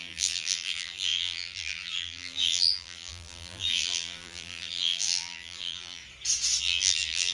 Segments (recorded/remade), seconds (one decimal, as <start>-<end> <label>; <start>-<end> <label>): 0.0-6.0 remade; 6.0-6.6 recorded; 6.6-7.3 remade